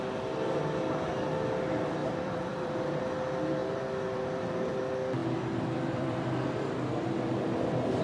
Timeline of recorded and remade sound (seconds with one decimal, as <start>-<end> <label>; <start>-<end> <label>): 0.0-2.0 recorded; 2.0-3.0 remade; 3.0-3.6 recorded; 3.6-4.4 remade; 4.4-5.2 recorded; 5.2-6.8 remade; 6.8-8.0 recorded